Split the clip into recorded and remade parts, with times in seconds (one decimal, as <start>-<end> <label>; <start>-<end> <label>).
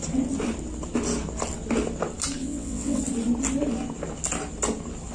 0.0-2.4 recorded; 2.4-3.0 remade; 3.0-5.1 recorded